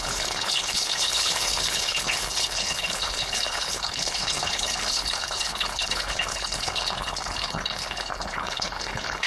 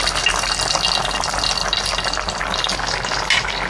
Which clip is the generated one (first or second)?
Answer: first